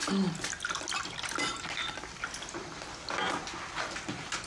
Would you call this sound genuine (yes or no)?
yes